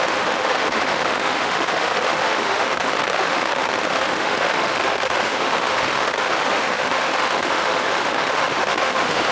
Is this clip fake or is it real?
fake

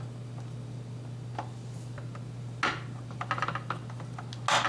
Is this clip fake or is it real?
real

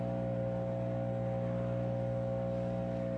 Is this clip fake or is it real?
real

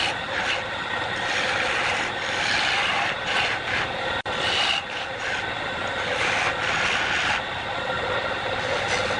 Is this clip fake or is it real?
real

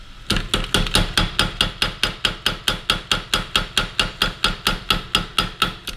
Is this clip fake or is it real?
real